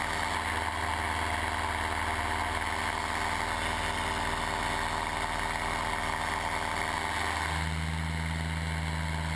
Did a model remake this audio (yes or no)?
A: no